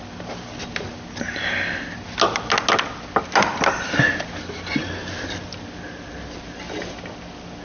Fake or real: real